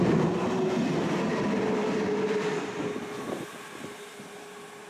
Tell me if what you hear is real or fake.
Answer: real